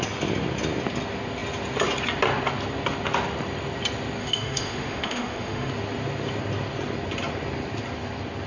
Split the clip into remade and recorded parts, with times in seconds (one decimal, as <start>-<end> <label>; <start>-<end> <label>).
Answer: 0.0-4.2 recorded; 4.2-5.7 remade; 5.7-8.5 recorded